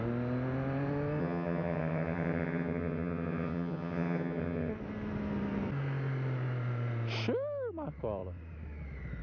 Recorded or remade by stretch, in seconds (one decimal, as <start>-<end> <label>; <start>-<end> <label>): 0.0-1.2 recorded; 1.2-4.7 remade; 4.7-9.2 recorded